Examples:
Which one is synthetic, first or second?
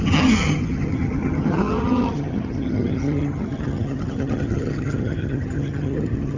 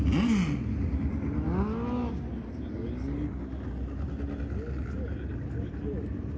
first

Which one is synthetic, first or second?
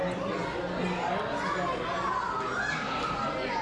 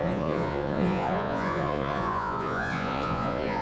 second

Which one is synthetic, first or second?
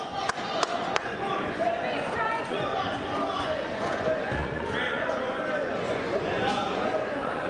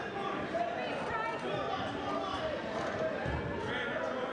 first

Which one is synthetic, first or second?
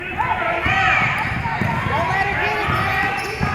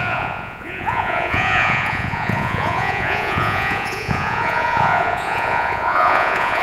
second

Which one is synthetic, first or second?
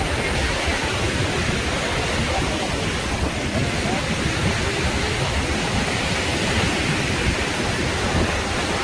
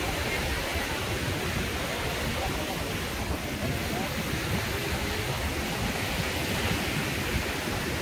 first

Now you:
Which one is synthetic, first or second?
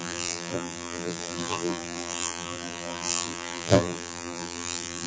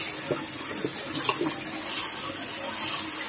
first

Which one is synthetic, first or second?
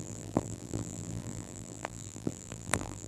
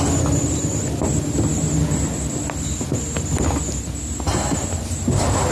first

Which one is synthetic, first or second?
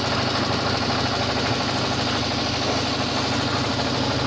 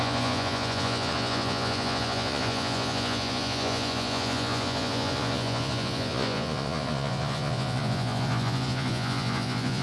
second